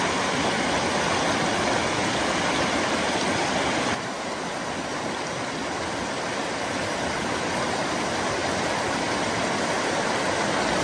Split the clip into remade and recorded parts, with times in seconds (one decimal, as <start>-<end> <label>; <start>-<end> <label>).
0.0-10.8 recorded